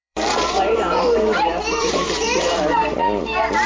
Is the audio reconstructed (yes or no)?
yes